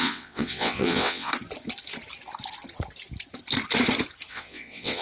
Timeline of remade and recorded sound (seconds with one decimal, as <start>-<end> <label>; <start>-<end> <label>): 0.0-1.3 remade; 1.3-4.3 recorded; 4.3-5.0 remade